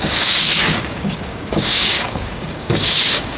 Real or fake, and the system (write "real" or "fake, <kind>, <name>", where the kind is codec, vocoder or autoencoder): fake, codec, DAC